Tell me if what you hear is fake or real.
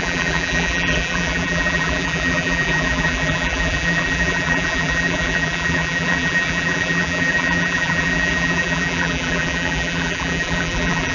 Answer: fake